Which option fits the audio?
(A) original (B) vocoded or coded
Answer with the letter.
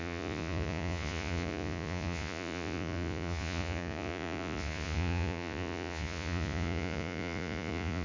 B